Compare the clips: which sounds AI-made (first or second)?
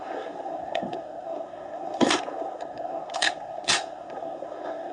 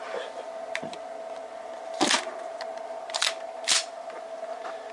first